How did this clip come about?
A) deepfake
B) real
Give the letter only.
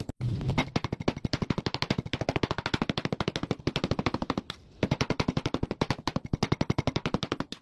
B